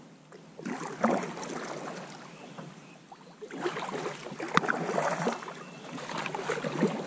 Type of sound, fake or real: real